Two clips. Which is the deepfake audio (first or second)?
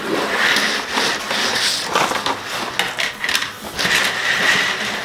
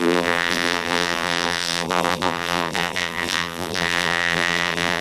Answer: second